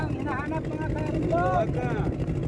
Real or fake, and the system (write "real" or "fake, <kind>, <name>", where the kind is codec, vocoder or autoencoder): real